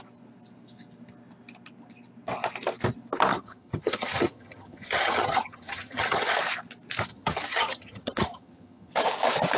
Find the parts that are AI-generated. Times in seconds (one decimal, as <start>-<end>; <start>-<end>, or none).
3.3-6.4; 7.1-8.9